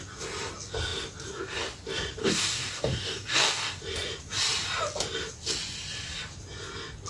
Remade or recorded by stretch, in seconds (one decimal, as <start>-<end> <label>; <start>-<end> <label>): 0.0-2.2 recorded; 2.2-3.8 remade; 3.8-7.1 recorded